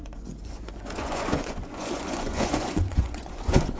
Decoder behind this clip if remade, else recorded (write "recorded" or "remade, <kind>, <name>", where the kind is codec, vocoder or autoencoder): remade, vocoder, Vocos